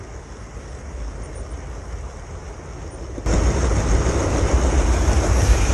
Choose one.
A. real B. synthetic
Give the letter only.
A